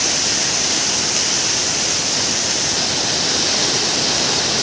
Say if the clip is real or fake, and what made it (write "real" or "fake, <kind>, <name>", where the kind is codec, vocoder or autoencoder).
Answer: real